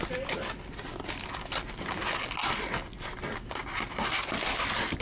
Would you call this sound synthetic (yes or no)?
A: no